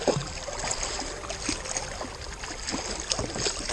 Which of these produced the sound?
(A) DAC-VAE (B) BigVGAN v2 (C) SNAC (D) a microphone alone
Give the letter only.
D